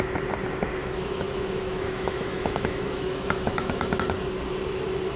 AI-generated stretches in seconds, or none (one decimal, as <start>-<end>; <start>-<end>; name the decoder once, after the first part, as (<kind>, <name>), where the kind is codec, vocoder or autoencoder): 0.8-3.9 (autoencoder, DAC-VAE)

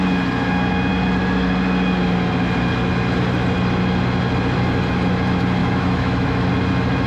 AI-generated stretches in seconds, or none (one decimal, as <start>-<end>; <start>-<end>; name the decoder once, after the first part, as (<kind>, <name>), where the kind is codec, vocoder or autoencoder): 5.6-6.5 (autoencoder, DAC-VAE)

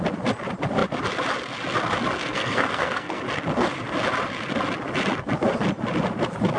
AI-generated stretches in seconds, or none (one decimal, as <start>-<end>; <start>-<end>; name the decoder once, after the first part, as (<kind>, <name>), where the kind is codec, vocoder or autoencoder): 2.2-3.2 (codec, SNAC)